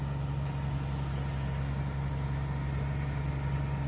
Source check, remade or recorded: recorded